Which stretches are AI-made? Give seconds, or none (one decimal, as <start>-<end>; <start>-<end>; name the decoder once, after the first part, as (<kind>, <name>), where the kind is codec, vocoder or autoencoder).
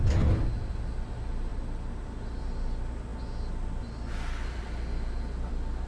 none